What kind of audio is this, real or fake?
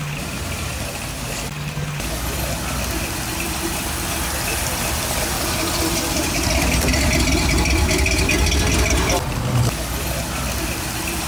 real